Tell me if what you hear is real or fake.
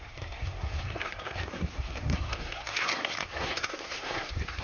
fake